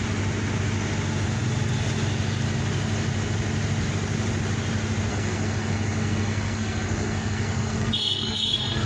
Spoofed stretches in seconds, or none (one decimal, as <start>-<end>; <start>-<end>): 5.1-8.9